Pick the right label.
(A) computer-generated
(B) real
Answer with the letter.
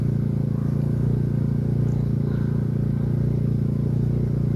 B